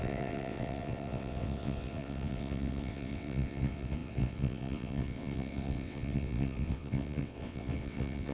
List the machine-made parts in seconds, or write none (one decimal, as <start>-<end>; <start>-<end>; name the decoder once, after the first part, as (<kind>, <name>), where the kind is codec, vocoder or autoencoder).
0.0-8.3 (vocoder, WaveNeXt)